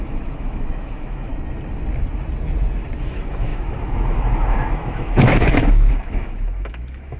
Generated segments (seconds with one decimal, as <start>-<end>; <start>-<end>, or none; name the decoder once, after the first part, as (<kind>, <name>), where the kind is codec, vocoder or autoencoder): 0.0-1.3 (autoencoder, DAC-VAE); 3.0-7.2